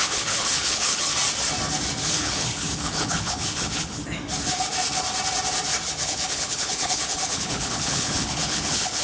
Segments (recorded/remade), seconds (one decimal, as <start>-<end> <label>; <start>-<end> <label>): 0.0-1.1 remade; 1.1-2.1 recorded; 2.1-4.0 remade; 4.0-6.0 recorded; 6.0-9.0 remade